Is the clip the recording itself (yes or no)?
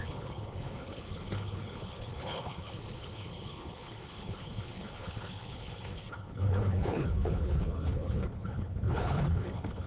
no